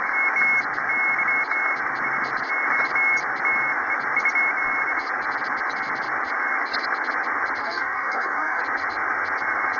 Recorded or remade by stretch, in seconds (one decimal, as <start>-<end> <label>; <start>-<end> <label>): 0.0-7.6 recorded; 7.6-8.6 remade; 8.6-9.8 recorded